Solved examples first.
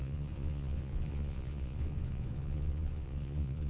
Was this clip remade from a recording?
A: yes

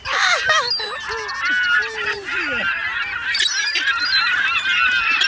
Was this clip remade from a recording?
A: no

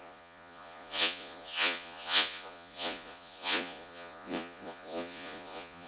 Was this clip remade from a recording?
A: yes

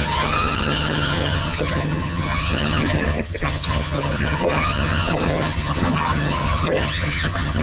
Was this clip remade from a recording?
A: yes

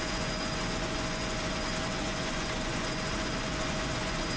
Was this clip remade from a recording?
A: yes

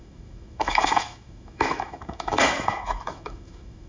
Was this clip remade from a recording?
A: yes